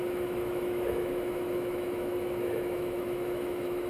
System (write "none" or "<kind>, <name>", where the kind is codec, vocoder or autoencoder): autoencoder, DAC-VAE